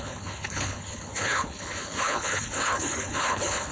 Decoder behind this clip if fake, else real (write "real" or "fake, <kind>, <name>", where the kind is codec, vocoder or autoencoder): fake, codec, HILCodec